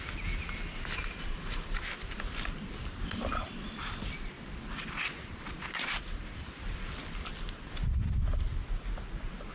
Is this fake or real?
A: real